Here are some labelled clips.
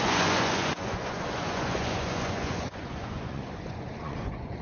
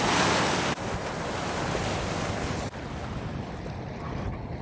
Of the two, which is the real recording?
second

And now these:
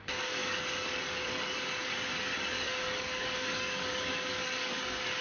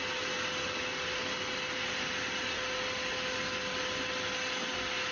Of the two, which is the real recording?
second